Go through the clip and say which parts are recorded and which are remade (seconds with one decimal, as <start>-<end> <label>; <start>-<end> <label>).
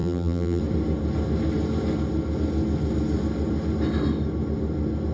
0.0-0.6 remade; 0.6-5.1 recorded